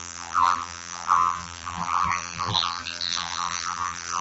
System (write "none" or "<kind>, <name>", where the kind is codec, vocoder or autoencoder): vocoder, BigVGAN v2